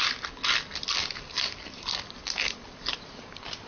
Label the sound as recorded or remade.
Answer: recorded